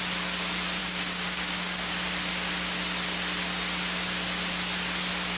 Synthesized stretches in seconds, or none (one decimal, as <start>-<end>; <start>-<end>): 0.8-1.9